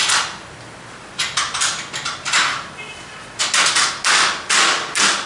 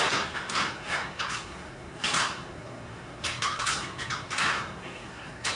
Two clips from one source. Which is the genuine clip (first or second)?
first